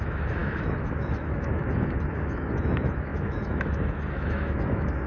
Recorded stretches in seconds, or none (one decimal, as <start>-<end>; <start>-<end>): none